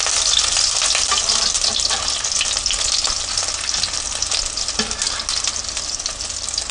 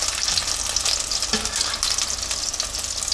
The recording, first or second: second